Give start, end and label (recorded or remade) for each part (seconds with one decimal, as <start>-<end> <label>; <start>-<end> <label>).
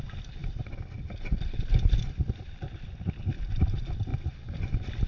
0.0-5.1 recorded